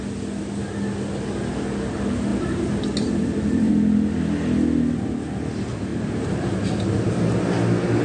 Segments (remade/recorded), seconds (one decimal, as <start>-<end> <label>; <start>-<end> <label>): 0.0-2.3 recorded; 2.3-3.7 remade; 3.7-5.9 recorded; 5.9-6.7 remade; 6.7-8.0 recorded